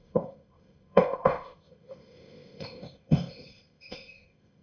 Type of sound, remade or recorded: remade